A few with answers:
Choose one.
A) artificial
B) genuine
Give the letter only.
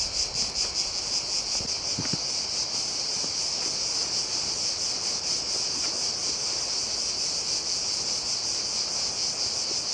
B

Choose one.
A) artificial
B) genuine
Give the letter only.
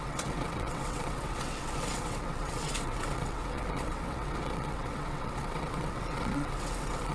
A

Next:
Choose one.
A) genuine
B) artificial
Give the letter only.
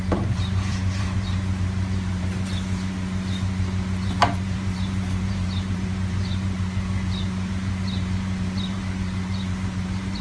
B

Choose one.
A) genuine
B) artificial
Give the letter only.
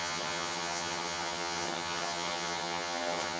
B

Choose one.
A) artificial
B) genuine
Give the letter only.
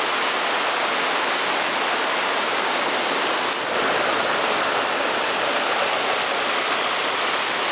B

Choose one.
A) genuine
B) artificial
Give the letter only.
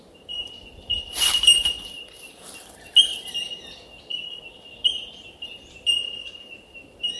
B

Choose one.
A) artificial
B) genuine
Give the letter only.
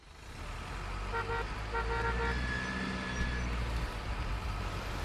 B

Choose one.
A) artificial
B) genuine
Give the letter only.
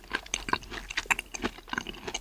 B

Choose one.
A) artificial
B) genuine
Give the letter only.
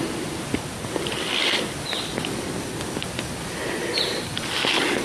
B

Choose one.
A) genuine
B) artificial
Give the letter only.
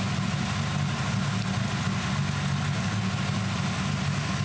A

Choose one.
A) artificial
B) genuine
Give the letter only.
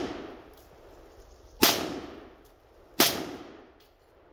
B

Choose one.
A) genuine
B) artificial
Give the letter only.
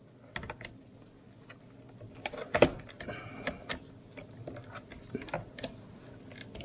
A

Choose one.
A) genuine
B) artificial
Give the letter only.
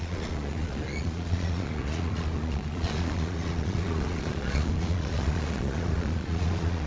B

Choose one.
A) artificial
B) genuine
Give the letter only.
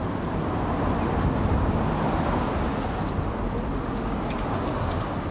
B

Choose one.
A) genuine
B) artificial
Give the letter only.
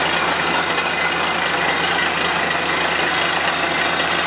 A